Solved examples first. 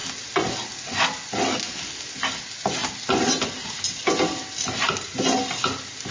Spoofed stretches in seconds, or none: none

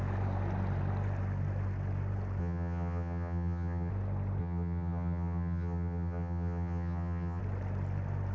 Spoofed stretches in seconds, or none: 2.4-3.9 (vocoder, HiFi-GAN); 4.4-7.4

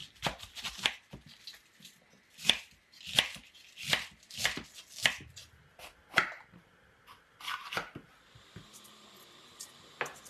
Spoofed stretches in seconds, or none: none

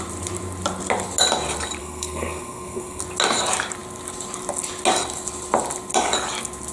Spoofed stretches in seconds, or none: 1.8-3.0 (codec, SNAC)

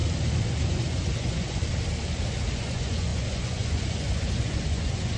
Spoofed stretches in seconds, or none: 0.6-1.6 (vocoder, Vocos); 2.5-5.2

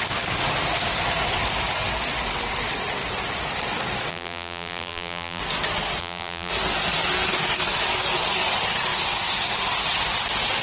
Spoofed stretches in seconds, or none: 4.1-5.4 (vocoder, BigVGAN v2); 6.0-6.5